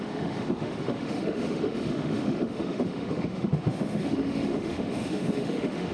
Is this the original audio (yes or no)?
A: no